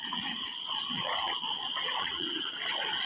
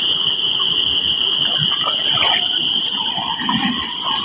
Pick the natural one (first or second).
second